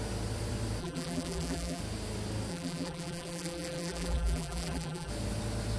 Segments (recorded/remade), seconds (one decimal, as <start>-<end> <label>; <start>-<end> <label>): 0.0-0.8 recorded; 0.8-1.8 remade; 1.8-2.5 recorded; 2.5-5.1 remade; 5.1-5.8 recorded